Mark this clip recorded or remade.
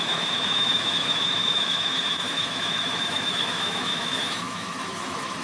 remade